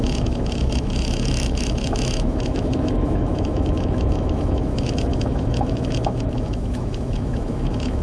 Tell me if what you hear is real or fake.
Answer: fake